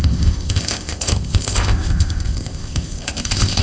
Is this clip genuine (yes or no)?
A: no